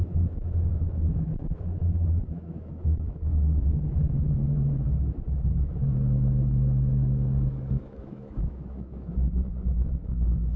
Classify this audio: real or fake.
fake